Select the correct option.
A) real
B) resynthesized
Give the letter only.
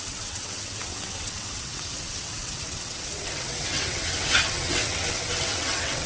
B